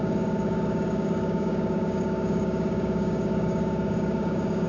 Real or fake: fake